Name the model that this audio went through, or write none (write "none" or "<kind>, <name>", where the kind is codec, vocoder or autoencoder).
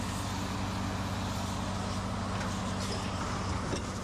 none